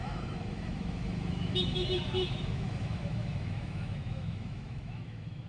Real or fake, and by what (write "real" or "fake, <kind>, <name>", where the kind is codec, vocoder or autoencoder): fake, autoencoder, DAC-VAE